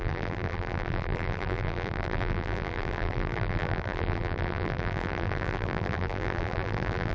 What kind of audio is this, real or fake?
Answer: fake